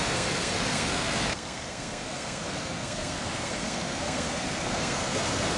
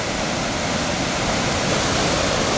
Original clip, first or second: second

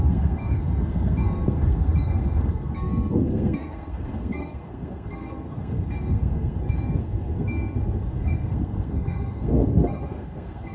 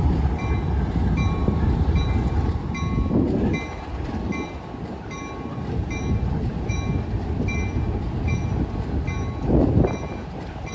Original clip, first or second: second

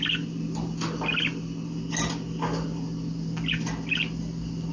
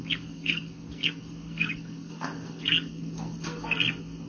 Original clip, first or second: first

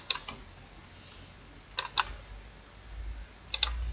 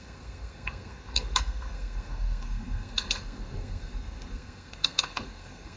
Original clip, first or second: first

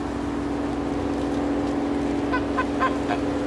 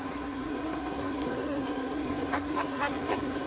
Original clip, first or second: first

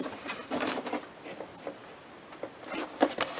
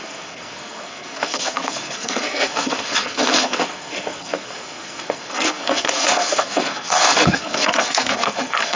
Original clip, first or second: first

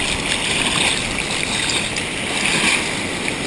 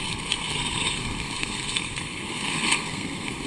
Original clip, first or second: first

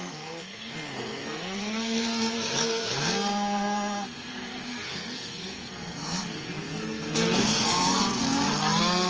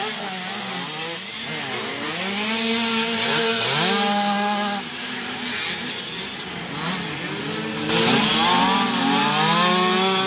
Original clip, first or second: second